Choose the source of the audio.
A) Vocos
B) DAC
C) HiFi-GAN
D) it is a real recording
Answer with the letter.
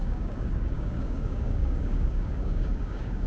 B